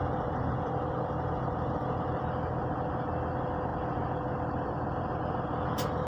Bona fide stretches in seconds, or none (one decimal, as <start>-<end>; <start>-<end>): 0.0-6.1

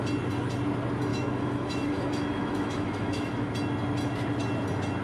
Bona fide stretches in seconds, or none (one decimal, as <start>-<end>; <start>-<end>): 0.0-1.1; 3.5-5.0

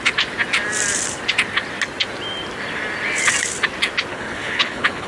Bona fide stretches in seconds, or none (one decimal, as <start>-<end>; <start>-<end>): 0.0-4.1